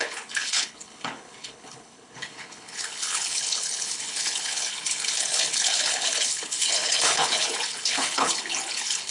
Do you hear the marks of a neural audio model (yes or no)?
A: yes